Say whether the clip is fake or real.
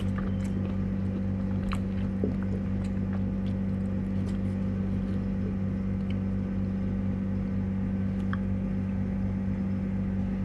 real